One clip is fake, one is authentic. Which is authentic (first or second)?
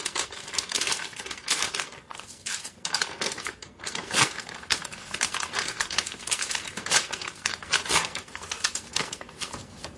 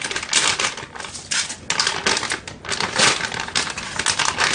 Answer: second